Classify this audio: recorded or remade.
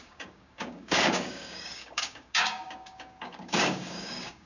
remade